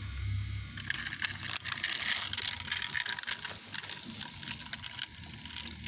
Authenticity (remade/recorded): recorded